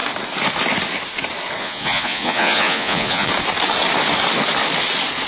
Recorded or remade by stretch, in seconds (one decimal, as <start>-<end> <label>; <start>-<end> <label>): 0.0-1.6 recorded; 1.6-3.3 remade; 3.3-5.3 recorded